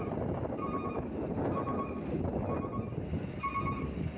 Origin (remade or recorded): recorded